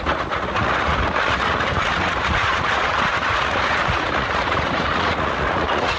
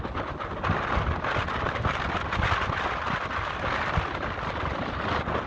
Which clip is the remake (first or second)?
first